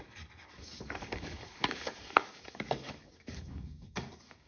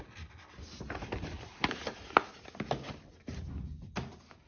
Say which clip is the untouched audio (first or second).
second